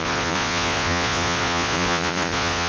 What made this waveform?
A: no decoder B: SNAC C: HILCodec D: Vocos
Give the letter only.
D